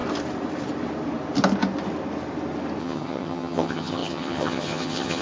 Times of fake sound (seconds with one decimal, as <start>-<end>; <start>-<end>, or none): 2.8-5.2